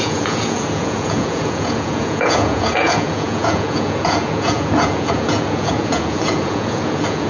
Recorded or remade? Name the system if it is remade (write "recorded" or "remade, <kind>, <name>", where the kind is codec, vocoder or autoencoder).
remade, vocoder, Vocos